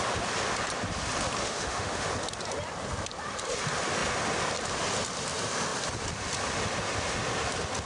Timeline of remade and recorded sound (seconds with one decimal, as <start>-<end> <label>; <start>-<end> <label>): 0.0-1.4 recorded; 1.4-2.1 remade; 2.1-7.9 recorded

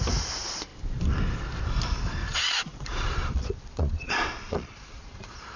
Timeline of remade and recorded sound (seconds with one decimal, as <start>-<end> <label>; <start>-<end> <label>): 0.0-2.3 recorded; 2.3-5.6 remade

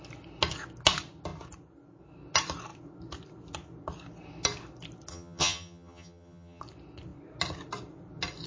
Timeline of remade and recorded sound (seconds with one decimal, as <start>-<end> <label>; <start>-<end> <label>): 0.0-5.1 recorded; 5.1-6.6 remade; 6.6-8.5 recorded

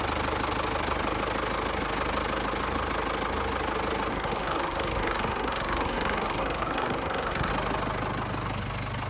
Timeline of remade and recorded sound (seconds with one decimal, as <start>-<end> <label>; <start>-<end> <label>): 0.0-4.1 recorded; 4.1-7.5 remade; 7.5-9.1 recorded

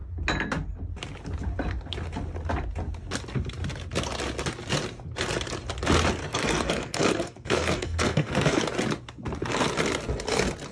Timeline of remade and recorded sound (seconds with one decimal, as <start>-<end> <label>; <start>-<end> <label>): 0.0-6.2 recorded; 6.2-8.6 remade; 8.6-10.7 recorded

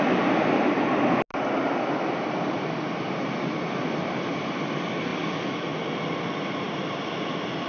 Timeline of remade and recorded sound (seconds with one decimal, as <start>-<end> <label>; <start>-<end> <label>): 0.0-7.7 recorded

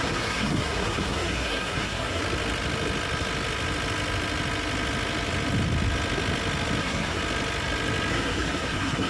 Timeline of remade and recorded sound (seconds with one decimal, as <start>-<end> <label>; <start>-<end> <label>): 0.0-2.2 remade; 2.2-6.8 recorded; 6.8-7.2 remade; 7.2-8.1 recorded; 8.1-9.1 remade